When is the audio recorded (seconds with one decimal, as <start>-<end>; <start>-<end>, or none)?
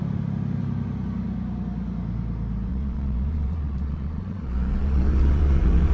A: 0.0-2.7